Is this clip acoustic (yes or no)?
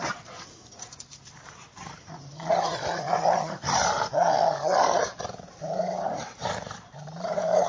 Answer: no